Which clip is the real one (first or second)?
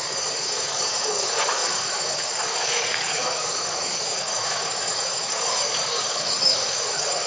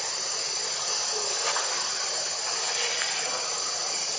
second